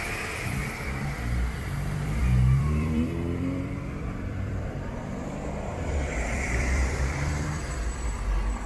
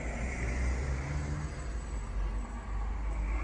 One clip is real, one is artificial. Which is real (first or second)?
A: second